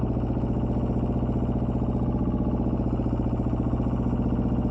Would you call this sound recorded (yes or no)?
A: yes